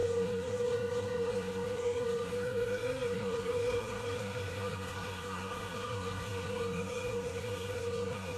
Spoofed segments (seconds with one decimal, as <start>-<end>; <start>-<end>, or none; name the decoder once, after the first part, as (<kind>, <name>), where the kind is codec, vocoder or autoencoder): 0.0-8.4 (codec, SNAC)

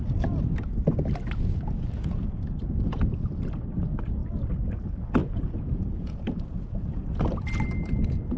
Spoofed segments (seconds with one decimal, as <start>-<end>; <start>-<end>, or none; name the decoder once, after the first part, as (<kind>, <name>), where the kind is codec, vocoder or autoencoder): 2.0-3.0 (vocoder, Vocos); 5.2-7.2

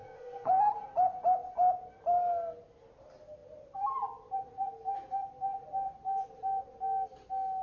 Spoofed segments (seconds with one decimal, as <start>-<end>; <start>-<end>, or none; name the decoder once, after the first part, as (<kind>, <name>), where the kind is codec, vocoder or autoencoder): 0.0-0.5 (codec, SNAC)